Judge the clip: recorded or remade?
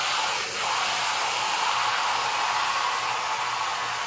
recorded